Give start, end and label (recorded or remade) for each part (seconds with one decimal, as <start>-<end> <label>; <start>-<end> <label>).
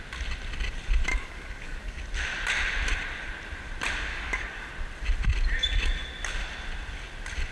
0.0-1.1 recorded; 1.1-1.9 remade; 1.9-4.1 recorded; 4.1-4.7 remade; 4.7-7.5 recorded